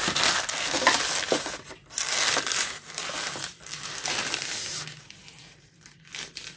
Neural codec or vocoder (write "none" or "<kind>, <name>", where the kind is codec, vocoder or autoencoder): none